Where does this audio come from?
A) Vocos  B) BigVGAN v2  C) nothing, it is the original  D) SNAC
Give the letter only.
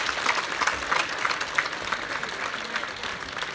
C